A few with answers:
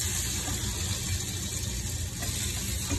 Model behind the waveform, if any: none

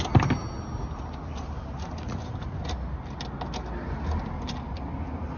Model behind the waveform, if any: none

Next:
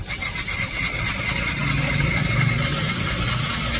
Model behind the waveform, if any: none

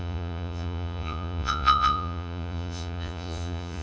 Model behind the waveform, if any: vocoder, Vocos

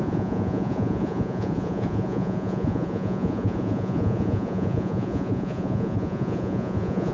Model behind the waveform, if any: vocoder, Vocos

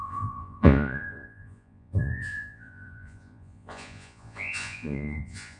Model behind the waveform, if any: vocoder, Vocos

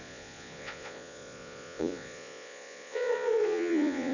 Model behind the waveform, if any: vocoder, Vocos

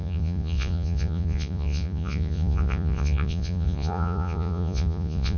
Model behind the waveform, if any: vocoder, Vocos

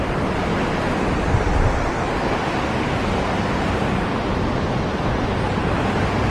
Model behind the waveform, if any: none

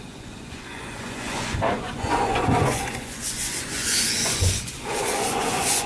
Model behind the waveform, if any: vocoder, Vocos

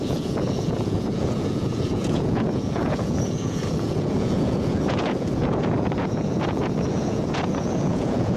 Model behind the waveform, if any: vocoder, Vocos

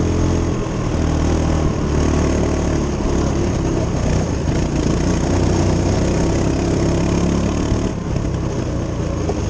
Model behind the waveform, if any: none